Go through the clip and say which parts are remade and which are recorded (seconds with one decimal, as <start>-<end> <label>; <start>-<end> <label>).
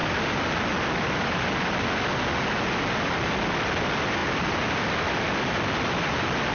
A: 0.0-6.5 recorded